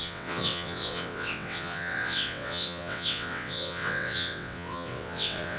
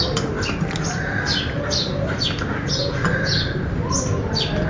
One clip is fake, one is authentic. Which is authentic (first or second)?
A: second